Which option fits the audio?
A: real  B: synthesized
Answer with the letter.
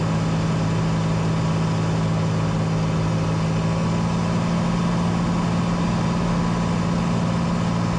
A